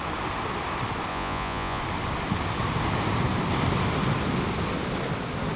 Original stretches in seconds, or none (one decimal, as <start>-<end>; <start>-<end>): 0.0-1.1; 1.8-5.6